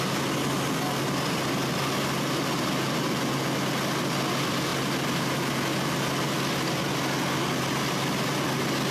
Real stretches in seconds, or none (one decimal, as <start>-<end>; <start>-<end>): 0.0-8.9